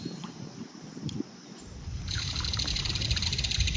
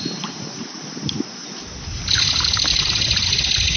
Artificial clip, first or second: first